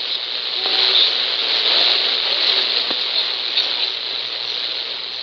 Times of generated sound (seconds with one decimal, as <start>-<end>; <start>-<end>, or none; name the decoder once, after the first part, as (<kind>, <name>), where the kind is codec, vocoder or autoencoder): none